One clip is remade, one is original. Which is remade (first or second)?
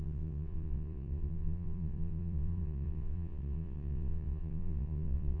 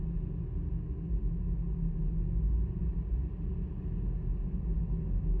first